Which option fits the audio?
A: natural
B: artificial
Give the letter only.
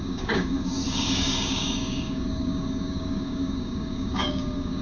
B